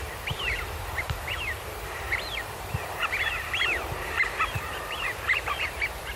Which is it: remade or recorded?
remade